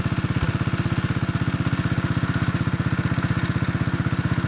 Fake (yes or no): no